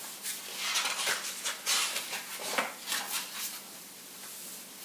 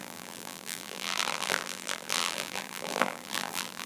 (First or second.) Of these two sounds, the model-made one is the second